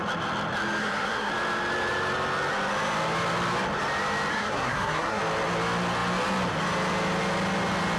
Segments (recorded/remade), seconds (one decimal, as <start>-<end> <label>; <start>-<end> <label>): 0.0-0.8 recorded; 0.8-1.3 remade; 1.3-4.3 recorded; 4.3-5.2 remade; 5.2-8.0 recorded